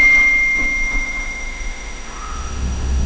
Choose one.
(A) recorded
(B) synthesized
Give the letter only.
B